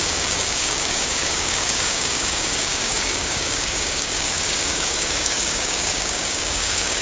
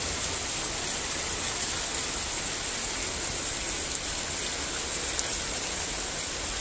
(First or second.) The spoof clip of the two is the first